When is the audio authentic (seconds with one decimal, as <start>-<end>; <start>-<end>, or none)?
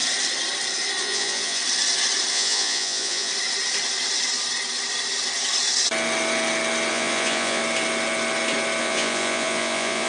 0.0-1.0; 1.6-2.3; 3.3-6.9; 7.6-8.8